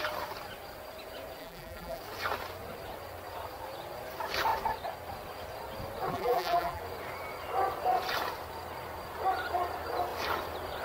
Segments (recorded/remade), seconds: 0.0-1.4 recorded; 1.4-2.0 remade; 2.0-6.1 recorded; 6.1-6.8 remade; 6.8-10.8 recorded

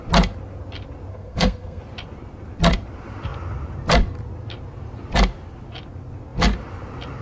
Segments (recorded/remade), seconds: 0.0-1.1 recorded; 1.1-1.8 remade; 1.8-7.2 recorded

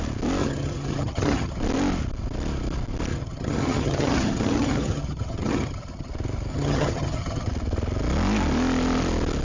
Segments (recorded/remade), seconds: 0.0-0.4 recorded; 0.4-1.6 remade; 1.6-3.1 recorded; 3.1-6.1 remade; 6.1-6.5 recorded; 6.5-7.5 remade; 7.5-9.4 recorded

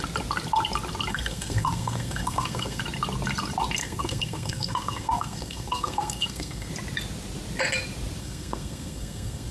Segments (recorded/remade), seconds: 0.0-1.1 recorded; 1.1-2.8 remade; 2.8-3.8 recorded; 3.8-6.7 remade; 6.7-8.2 recorded; 8.2-9.5 remade